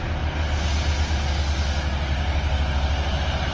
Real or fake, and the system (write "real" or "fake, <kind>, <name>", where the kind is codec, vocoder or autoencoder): real